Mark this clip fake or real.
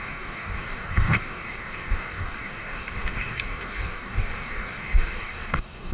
fake